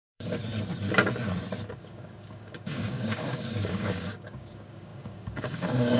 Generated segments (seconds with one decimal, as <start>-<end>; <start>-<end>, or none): 0.0-0.4; 1.7-6.0